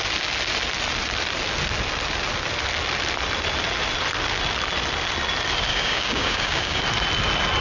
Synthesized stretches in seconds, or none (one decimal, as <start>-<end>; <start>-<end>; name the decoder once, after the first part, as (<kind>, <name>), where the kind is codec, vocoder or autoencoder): 5.7-6.8 (codec, DAC)